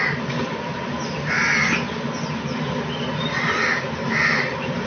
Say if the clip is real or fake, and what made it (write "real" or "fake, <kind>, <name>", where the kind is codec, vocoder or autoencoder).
real